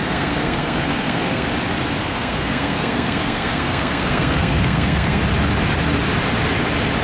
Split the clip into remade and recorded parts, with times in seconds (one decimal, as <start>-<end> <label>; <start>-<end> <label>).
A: 0.0-1.5 remade; 1.5-2.0 recorded; 2.0-5.2 remade; 5.2-7.0 recorded